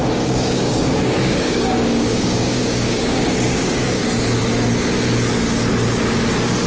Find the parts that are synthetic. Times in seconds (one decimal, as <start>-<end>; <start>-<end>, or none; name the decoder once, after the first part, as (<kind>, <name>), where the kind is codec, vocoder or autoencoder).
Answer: 0.0-4.0 (codec, DAC)